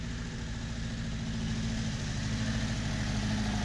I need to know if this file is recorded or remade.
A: recorded